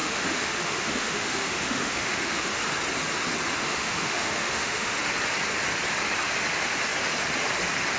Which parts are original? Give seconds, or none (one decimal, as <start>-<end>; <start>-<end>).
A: 2.6-3.6; 5.0-8.0